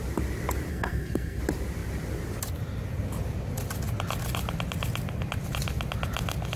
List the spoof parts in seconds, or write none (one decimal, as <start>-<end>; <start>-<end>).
0.7-1.4